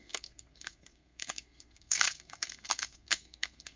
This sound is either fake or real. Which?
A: fake